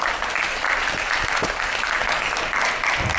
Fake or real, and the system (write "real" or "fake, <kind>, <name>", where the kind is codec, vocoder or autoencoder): real